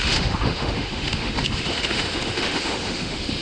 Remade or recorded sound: remade